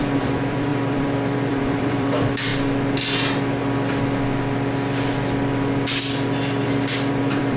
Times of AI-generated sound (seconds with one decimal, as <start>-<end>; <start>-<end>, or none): 0.0-2.5; 7.1-7.6